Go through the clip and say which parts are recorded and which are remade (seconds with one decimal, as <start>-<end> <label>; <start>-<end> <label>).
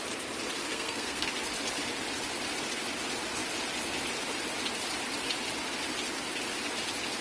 0.0-0.7 recorded; 0.7-1.3 remade; 1.3-7.2 recorded